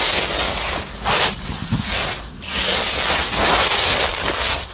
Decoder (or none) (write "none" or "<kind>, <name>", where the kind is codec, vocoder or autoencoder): none